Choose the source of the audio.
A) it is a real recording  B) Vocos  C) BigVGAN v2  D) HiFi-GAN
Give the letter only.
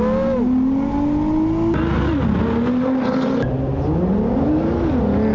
A